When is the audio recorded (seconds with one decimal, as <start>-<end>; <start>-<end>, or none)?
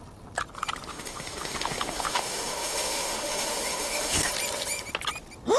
0.0-0.9; 4.3-5.6